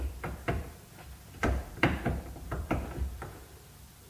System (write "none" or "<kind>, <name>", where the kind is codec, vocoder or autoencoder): vocoder, BigVGAN v2